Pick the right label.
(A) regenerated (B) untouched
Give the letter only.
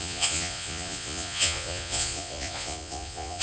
A